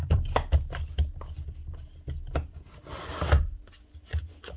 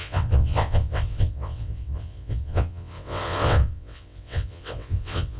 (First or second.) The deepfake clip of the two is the second